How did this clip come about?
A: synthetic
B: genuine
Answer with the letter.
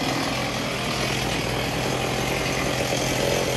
B